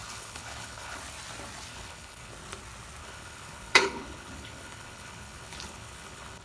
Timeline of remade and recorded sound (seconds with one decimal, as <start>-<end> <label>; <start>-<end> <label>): 0.0-1.0 remade; 1.0-1.7 recorded; 1.7-2.3 remade; 2.3-3.0 recorded; 3.0-6.4 remade